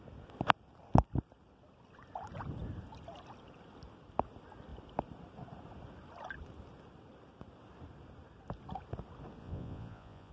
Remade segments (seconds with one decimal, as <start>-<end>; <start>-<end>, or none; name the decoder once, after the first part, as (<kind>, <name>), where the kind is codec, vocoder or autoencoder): 9.4-10.3 (vocoder, Vocos)